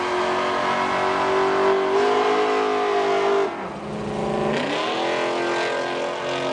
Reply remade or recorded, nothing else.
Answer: recorded